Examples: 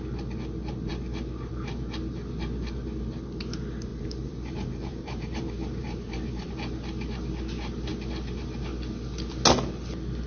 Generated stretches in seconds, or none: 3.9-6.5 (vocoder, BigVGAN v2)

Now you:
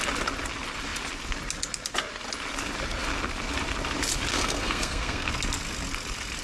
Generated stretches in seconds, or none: 4.3-5.3 (codec, SNAC)